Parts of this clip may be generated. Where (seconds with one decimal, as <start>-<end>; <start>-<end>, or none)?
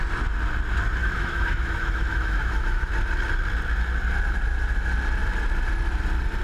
1.0-2.9